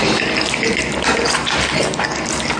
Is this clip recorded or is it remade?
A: recorded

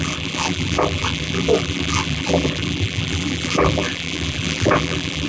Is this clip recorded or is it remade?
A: remade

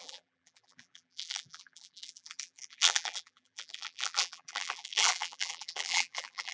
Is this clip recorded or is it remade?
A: remade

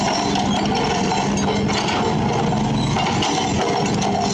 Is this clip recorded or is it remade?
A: recorded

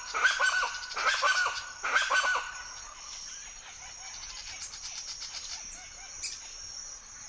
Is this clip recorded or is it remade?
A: remade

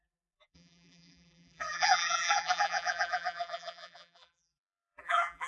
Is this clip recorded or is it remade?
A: remade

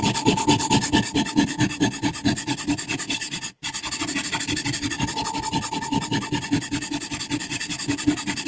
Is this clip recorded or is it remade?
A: recorded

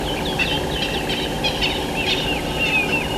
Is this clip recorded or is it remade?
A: recorded